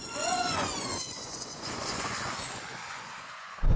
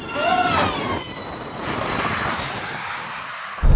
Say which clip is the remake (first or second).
first